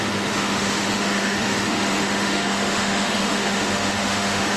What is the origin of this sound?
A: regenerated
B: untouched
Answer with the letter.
A